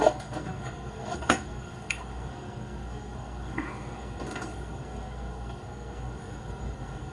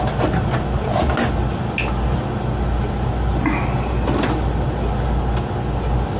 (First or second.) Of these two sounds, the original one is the second